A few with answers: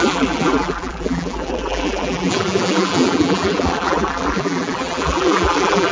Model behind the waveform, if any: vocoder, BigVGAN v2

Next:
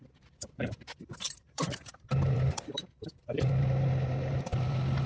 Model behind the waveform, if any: vocoder, BigVGAN v2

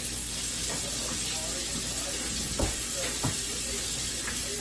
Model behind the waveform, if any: none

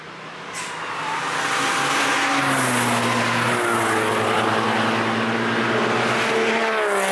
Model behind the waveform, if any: none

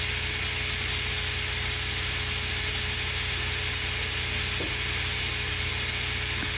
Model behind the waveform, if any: none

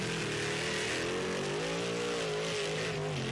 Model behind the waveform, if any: none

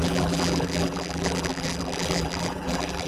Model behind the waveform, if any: vocoder, BigVGAN v2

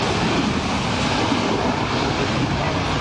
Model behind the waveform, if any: none